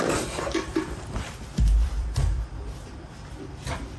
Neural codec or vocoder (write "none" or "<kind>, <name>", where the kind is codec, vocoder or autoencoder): vocoder, BigVGAN v2